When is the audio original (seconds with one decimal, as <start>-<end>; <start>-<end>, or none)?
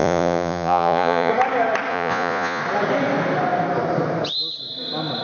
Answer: 1.3-1.9; 2.6-5.2